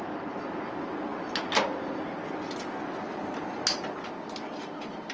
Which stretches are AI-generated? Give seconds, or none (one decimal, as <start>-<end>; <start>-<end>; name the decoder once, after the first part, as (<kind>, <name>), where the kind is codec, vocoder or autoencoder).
none